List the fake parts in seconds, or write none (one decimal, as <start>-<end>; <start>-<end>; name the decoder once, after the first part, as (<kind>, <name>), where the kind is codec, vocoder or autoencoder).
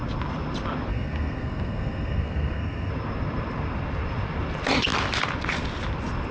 0.9-2.9 (codec, SNAC)